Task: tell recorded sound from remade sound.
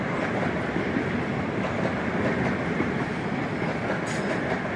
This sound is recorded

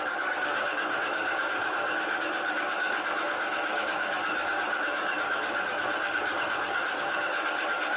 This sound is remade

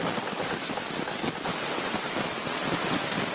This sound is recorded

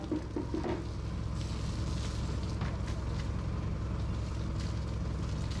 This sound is recorded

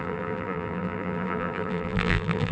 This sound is remade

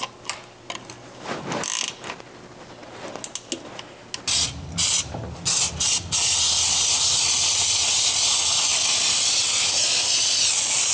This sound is recorded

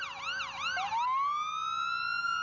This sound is recorded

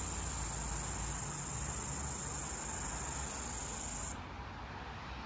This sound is recorded